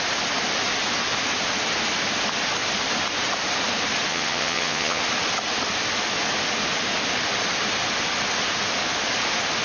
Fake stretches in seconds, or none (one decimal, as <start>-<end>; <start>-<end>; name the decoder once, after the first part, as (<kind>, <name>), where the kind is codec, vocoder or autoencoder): 4.1-5.0 (vocoder, HiFi-GAN)